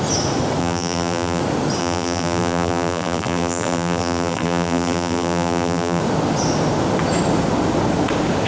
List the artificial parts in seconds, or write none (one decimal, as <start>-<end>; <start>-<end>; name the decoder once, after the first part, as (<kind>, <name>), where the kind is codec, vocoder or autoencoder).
0.6-1.4 (vocoder, BigVGAN v2); 1.8-6.0